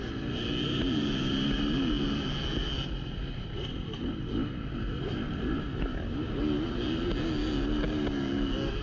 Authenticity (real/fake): real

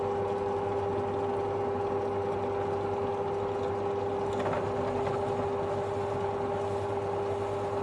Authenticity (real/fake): real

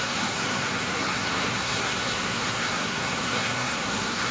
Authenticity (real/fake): fake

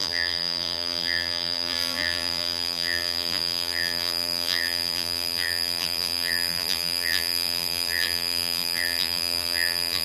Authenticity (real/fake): fake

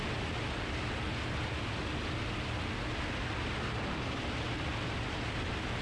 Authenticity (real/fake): real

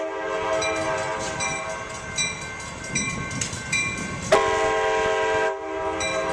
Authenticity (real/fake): real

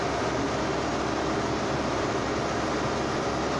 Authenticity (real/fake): real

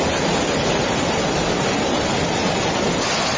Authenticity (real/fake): real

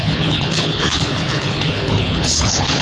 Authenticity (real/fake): fake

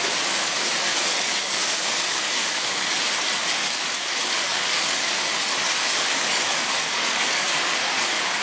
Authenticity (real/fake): fake